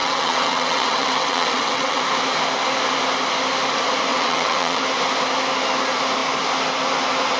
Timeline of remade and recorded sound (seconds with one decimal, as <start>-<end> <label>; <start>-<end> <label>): 0.0-2.0 remade; 2.0-4.1 recorded; 4.1-4.8 remade; 4.8-7.4 recorded